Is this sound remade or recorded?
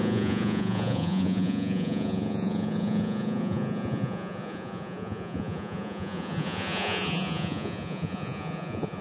remade